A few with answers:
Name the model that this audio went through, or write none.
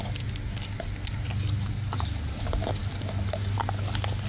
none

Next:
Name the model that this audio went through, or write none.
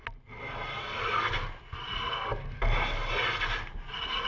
none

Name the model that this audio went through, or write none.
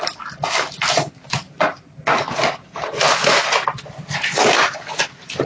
none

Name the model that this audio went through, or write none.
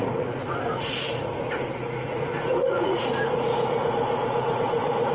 vocoder, Vocos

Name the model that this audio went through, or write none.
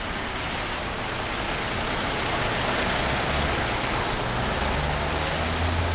none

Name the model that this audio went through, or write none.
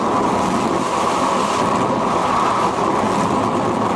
none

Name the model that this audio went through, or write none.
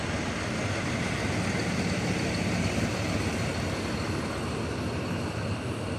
none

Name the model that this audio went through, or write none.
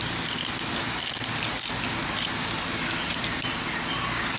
none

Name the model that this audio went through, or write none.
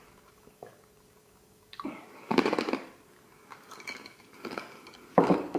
codec, DAC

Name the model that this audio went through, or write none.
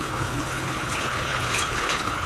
codec, HILCodec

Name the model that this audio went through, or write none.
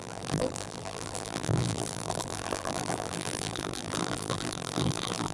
vocoder, BigVGAN v2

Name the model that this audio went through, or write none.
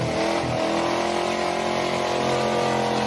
none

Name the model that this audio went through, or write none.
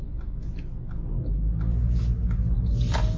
none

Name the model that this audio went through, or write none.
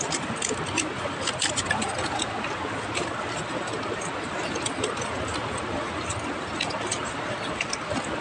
none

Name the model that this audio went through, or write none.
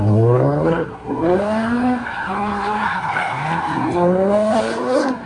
codec, SNAC